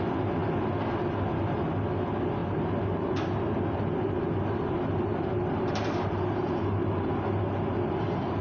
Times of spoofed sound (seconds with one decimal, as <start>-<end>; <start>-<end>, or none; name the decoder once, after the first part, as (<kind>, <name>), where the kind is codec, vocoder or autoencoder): none